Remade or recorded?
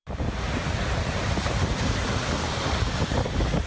recorded